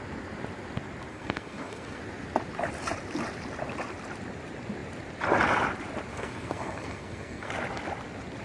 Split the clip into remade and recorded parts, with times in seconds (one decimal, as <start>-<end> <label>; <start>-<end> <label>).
0.0-1.1 recorded; 1.1-2.0 remade; 2.0-6.1 recorded; 6.1-7.5 remade; 7.5-8.4 recorded